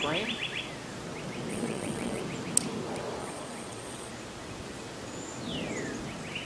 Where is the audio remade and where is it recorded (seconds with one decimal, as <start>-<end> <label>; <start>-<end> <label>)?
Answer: 0.0-1.5 recorded; 1.5-2.2 remade; 2.2-3.2 recorded; 3.2-4.1 remade; 4.1-6.4 recorded